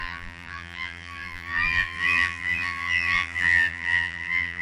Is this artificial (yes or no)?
yes